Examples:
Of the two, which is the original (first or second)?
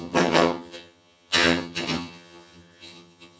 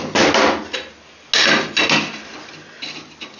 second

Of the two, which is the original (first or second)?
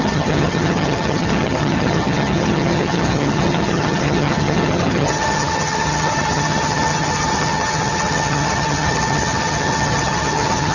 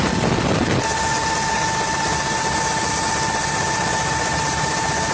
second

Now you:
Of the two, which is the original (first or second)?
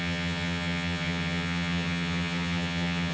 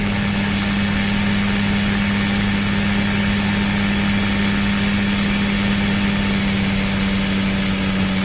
second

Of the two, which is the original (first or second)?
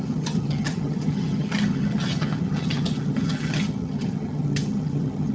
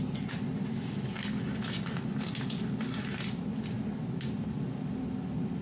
second